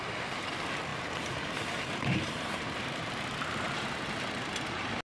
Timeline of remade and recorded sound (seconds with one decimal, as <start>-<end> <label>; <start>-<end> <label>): 0.0-0.9 recorded; 0.9-4.0 remade; 4.0-5.1 recorded